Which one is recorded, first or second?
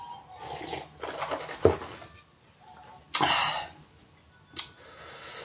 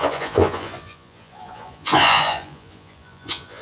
first